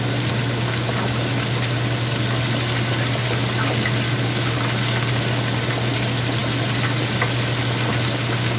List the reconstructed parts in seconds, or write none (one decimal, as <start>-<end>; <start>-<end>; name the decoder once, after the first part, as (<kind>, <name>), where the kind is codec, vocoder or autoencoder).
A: none